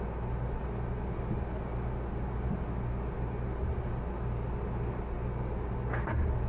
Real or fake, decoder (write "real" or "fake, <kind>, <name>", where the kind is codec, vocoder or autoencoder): real